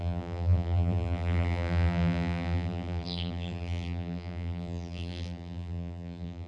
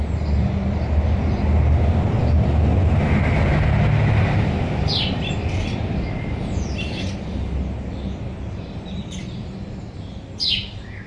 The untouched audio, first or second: second